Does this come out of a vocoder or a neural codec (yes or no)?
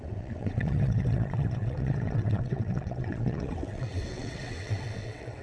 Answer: yes